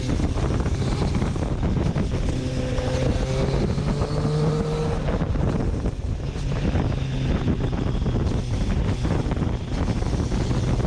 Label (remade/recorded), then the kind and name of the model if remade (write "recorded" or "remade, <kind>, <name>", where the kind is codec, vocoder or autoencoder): recorded